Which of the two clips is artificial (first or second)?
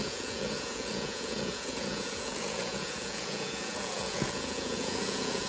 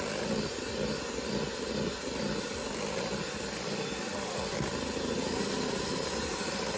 first